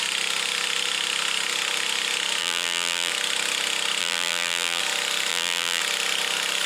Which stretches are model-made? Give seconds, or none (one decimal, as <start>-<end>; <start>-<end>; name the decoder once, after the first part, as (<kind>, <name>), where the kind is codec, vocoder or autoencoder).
2.4-3.1 (vocoder, BigVGAN v2); 4.0-4.8; 5.3-5.8